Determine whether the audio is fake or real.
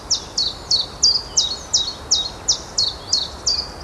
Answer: real